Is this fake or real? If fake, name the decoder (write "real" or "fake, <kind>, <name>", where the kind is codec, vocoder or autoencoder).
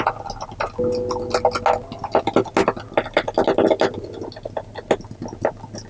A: real